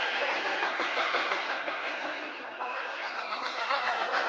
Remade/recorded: remade